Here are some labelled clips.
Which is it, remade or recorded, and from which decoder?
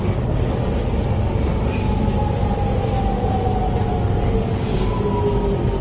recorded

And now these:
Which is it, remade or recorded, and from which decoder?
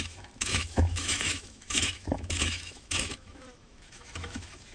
remade, autoencoder, DAC-VAE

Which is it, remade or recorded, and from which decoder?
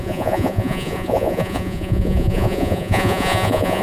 remade, vocoder, Vocos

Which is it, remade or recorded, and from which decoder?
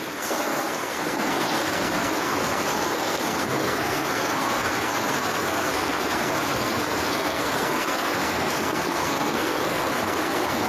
remade, codec, SNAC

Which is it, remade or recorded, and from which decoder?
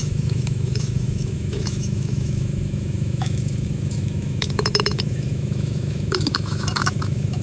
remade, autoencoder, DAC-VAE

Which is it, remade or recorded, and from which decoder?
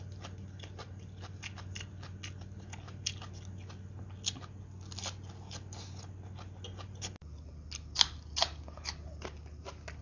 recorded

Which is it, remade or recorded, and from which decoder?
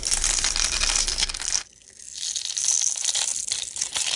recorded